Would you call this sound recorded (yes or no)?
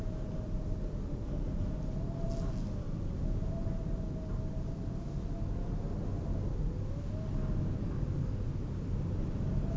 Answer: yes